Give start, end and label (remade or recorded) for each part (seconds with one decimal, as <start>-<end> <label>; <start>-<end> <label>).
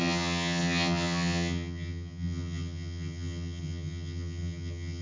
0.0-5.0 remade